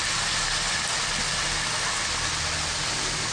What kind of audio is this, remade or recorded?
recorded